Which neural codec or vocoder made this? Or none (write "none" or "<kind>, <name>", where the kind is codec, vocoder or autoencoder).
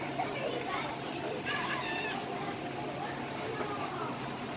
vocoder, BigVGAN v2